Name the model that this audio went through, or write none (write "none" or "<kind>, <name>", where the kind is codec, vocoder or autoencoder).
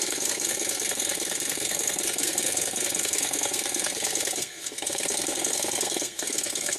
codec, SNAC